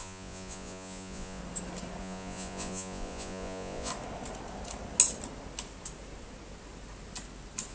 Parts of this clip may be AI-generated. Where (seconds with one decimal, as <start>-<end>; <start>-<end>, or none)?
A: 0.0-1.4; 2.0-3.9